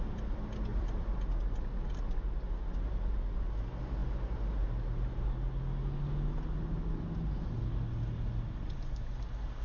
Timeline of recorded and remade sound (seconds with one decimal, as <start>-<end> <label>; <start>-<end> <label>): 0.0-0.7 recorded; 0.7-1.2 remade; 1.2-9.6 recorded